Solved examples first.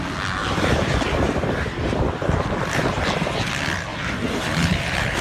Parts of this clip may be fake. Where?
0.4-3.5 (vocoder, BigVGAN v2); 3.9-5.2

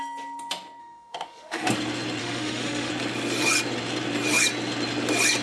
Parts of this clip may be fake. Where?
0.8-1.7 (autoencoder, DAC-VAE); 2.2-2.9

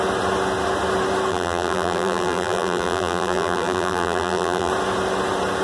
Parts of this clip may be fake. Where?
1.3-4.7 (vocoder, BigVGAN v2)

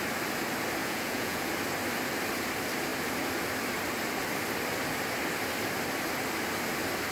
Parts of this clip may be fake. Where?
0.8-1.5 (vocoder, Vocos)

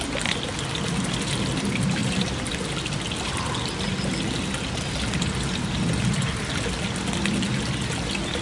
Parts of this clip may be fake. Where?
2.0-2.7 (vocoder, BigVGAN v2)

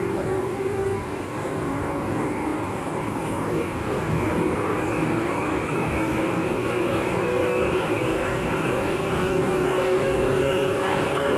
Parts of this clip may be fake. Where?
0.0-11.4 (codec, DAC)

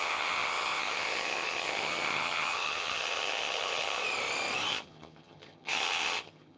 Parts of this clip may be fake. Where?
0.0-4.0 (vocoder, HiFi-GAN); 4.7-6.6

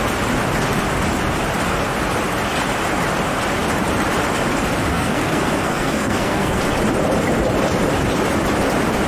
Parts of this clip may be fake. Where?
4.9-6.6 (codec, SNAC)